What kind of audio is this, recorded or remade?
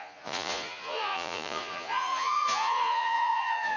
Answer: remade